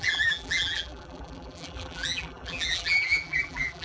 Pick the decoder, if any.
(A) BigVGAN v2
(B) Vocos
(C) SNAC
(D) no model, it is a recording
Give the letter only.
A